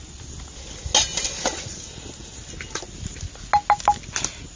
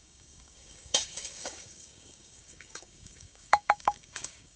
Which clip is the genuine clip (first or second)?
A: first